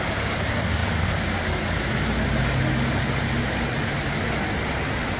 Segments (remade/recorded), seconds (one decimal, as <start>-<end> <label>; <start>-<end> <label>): 0.0-5.2 recorded